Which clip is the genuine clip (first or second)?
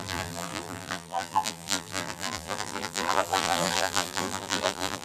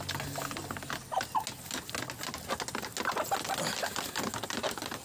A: second